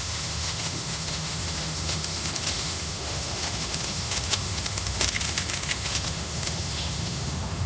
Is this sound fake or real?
fake